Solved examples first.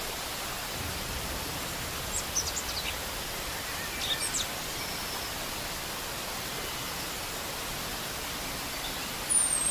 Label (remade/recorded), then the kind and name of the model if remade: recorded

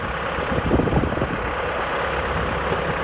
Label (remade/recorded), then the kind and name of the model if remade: recorded